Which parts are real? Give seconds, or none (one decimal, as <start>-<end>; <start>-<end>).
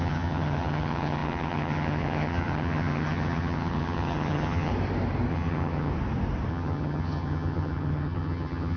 4.7-5.3; 5.9-6.5